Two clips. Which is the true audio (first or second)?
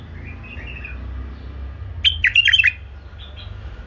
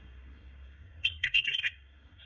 first